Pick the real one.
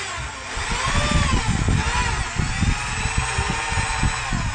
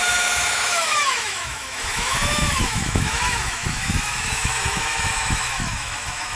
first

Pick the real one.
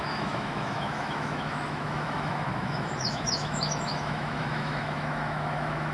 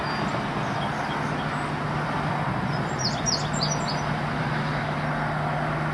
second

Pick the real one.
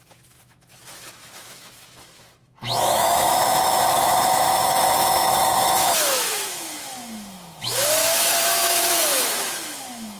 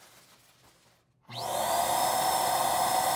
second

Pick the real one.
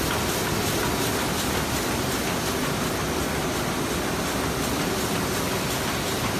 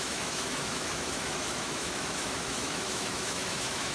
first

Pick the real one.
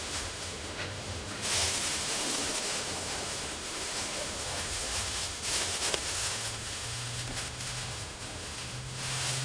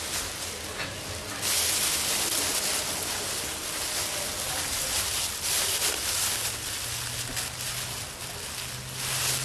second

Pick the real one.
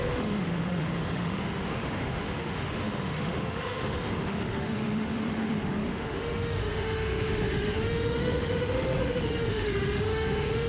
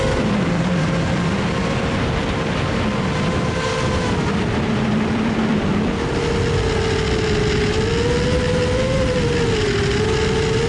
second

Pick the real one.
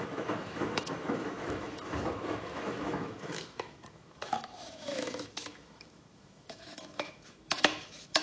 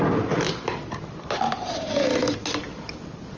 second